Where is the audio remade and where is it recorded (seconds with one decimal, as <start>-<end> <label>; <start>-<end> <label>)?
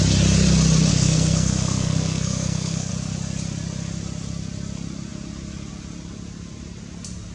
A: 0.0-0.9 recorded; 0.9-2.9 remade; 2.9-7.3 recorded